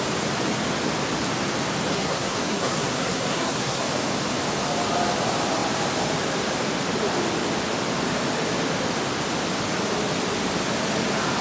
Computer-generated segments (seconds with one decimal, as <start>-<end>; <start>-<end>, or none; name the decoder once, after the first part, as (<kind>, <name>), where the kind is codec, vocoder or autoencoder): 1.9-3.8 (codec, SNAC)